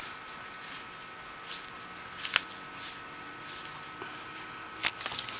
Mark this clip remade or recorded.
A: recorded